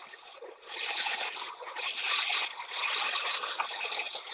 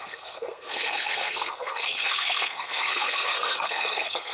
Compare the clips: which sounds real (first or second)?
first